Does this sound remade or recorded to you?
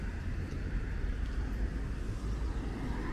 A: recorded